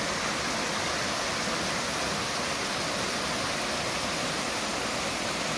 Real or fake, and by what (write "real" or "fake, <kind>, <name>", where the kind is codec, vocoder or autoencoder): real